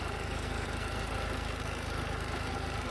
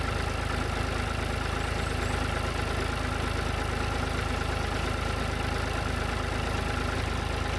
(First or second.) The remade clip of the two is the first